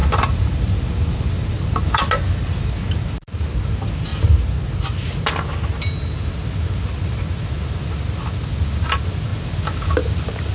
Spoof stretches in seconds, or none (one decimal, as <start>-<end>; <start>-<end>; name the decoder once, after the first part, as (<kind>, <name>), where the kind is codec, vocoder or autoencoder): 0.0-2.0 (vocoder, BigVGAN v2)